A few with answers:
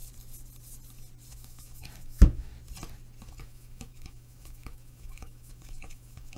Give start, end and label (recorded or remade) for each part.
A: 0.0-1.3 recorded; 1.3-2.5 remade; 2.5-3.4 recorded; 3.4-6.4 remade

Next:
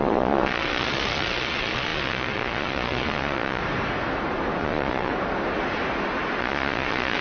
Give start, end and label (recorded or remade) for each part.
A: 0.0-3.6 remade; 3.6-4.6 recorded; 4.6-5.1 remade; 5.1-6.4 recorded; 6.4-7.2 remade

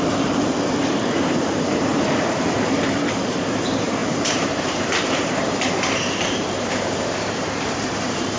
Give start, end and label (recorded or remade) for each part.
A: 0.0-1.9 remade; 1.9-3.6 recorded; 3.6-8.4 remade

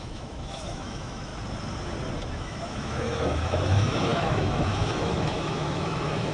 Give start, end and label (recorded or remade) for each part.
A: 0.0-1.3 remade; 1.3-2.3 recorded; 2.3-6.3 remade

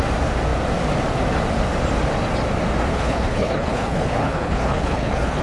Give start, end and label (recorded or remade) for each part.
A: 0.0-2.9 recorded; 2.9-5.4 remade

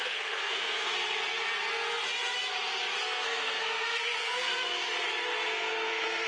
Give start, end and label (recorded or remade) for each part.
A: 0.0-1.2 remade; 1.2-3.0 recorded; 3.0-4.5 remade; 4.5-5.2 recorded; 5.2-6.3 remade

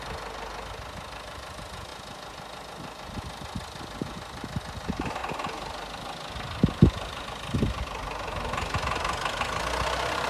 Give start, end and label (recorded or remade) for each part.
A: 0.0-10.3 recorded

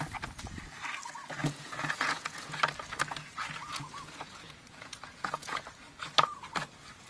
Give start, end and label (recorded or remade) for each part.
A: 0.0-1.4 recorded; 1.4-2.6 remade; 2.6-3.6 recorded; 3.6-5.6 remade; 5.6-7.1 recorded